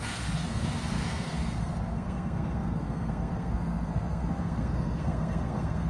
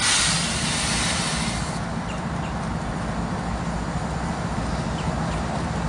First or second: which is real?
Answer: second